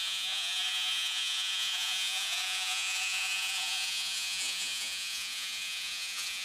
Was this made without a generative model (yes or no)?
no